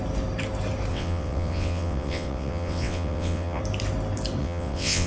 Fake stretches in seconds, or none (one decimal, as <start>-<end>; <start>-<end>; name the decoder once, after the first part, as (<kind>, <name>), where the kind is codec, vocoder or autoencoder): 0.9-3.6 (vocoder, WaveNeXt); 4.4-5.1